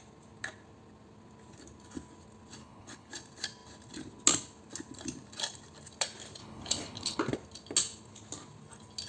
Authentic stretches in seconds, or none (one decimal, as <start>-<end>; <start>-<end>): 0.0-2.6; 3.1-6.4; 7.2-9.1